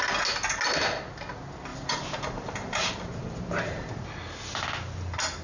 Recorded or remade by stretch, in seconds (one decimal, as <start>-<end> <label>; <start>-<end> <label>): 0.0-1.7 recorded; 1.7-4.1 remade; 4.1-5.4 recorded